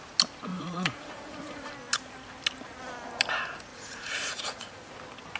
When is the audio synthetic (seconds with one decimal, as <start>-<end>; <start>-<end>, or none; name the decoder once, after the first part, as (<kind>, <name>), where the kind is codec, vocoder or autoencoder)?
0.5-1.7 (vocoder, Vocos); 3.7-4.9